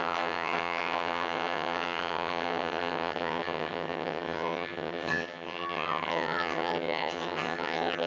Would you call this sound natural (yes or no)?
no